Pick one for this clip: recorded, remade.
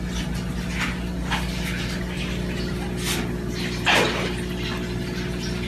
recorded